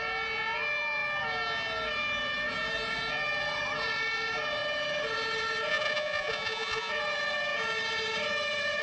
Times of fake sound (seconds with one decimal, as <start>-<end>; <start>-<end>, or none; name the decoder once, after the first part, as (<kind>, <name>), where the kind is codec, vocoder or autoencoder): 5.7-6.9 (vocoder, Vocos)